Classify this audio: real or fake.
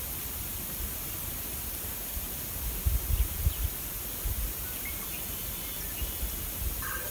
real